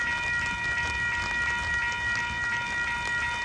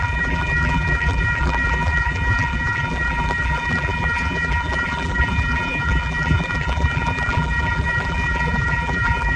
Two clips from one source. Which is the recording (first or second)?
first